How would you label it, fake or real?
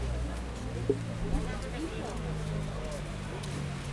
real